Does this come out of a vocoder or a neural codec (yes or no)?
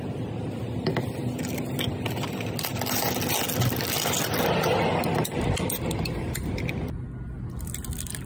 no